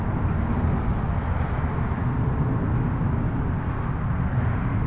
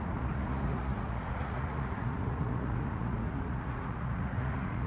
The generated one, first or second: second